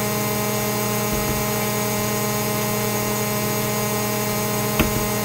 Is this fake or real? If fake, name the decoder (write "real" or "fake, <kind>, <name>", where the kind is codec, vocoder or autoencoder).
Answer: fake, vocoder, BigVGAN v2